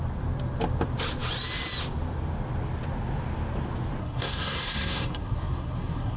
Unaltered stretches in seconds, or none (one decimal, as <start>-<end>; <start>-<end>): 0.0-4.0